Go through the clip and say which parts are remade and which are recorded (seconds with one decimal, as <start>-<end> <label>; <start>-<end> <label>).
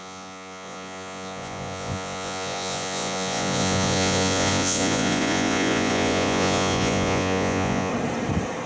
0.0-7.9 remade; 7.9-8.7 recorded